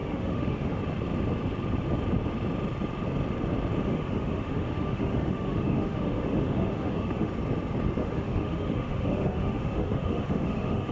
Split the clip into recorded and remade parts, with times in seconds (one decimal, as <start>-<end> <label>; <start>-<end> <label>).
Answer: 0.0-0.8 remade; 0.8-3.9 recorded; 3.9-7.3 remade; 7.3-8.0 recorded; 8.0-10.9 remade